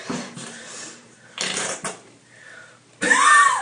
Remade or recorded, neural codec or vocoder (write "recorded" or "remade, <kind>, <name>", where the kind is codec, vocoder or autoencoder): remade, vocoder, BigVGAN v2